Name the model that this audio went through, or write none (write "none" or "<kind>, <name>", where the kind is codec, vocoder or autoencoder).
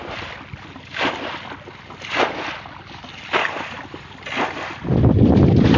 none